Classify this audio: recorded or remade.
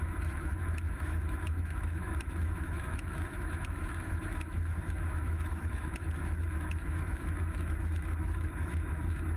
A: remade